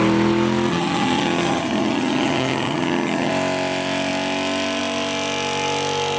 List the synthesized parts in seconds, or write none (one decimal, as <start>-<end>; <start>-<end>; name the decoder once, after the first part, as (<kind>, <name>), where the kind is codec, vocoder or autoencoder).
0.7-3.3 (vocoder, HiFi-GAN)